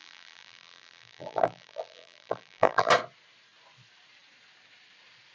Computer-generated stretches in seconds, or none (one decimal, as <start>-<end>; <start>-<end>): 0.0-2.9